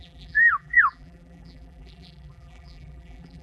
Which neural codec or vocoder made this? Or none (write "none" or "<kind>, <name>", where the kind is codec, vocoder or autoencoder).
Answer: vocoder, BigVGAN v2